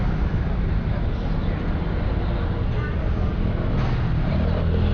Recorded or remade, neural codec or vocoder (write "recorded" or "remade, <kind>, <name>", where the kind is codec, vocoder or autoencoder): recorded